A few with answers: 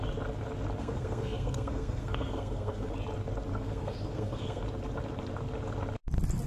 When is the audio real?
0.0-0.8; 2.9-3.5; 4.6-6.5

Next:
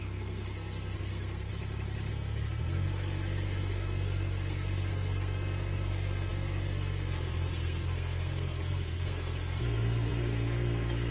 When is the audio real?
1.5-2.1

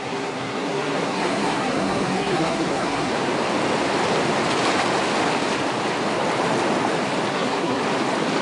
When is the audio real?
3.1-7.3; 7.8-8.4